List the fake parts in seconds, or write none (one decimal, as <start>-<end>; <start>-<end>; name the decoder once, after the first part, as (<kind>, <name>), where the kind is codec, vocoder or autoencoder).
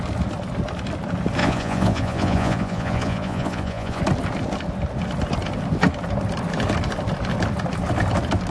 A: 1.4-4.0 (vocoder, Vocos)